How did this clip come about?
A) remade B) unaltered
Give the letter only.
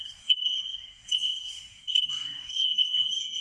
A